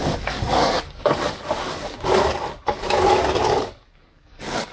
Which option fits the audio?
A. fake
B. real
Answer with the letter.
A